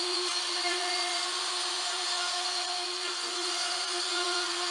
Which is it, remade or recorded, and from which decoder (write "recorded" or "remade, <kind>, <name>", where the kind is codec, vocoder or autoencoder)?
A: remade, vocoder, Vocos